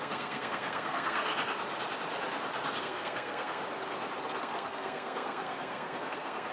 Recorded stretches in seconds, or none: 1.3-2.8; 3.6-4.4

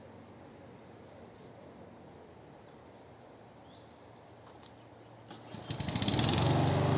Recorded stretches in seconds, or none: 0.0-7.0